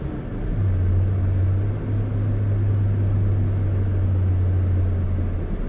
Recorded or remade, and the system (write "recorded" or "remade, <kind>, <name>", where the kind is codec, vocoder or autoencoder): recorded